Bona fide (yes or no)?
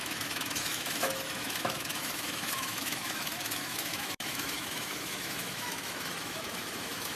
no